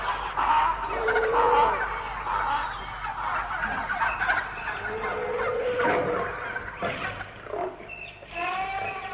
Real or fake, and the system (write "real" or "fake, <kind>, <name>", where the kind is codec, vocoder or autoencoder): real